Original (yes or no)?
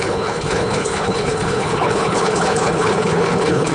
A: no